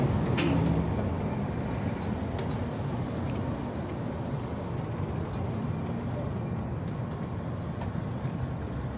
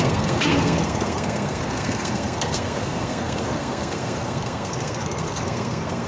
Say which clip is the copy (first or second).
second